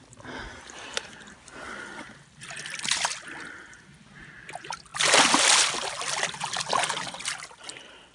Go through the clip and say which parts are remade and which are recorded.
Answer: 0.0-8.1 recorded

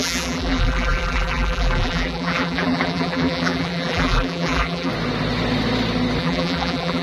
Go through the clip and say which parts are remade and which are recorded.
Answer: 0.0-4.9 remade; 4.9-6.2 recorded; 6.2-7.0 remade

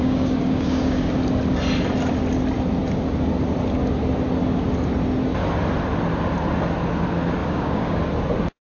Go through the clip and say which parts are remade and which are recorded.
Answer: 0.0-1.1 remade; 1.1-7.4 recorded; 7.4-8.0 remade; 8.0-8.8 recorded

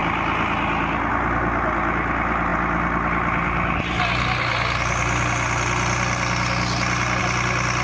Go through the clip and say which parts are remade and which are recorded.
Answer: 0.0-7.8 recorded

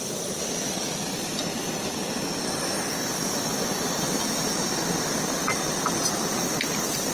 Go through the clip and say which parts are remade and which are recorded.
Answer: 0.0-7.1 recorded

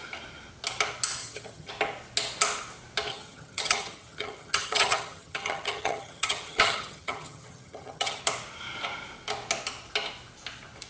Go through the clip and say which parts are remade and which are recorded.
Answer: 0.0-1.2 recorded; 1.2-1.7 remade; 1.7-3.1 recorded; 3.1-8.2 remade; 8.2-10.9 recorded